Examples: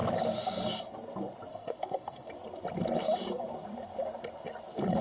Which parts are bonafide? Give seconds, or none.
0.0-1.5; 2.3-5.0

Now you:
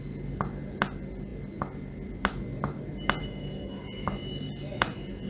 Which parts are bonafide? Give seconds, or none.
0.0-3.2; 3.8-5.3

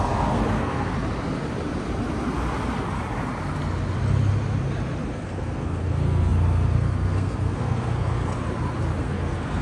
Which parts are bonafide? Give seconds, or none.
0.9-5.1; 8.3-9.0

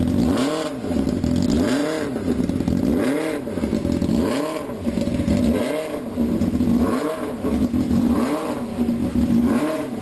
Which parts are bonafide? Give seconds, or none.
0.0-10.0